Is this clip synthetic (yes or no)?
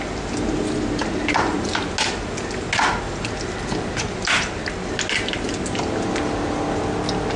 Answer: no